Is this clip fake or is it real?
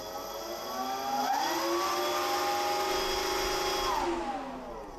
real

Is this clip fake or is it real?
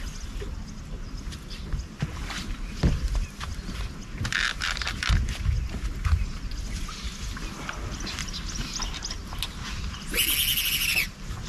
real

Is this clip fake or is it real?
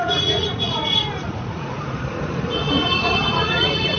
fake